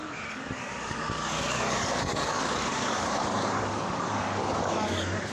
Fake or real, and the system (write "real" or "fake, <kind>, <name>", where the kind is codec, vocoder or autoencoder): fake, codec, DAC